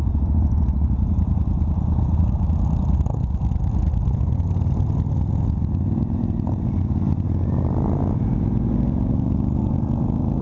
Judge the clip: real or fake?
real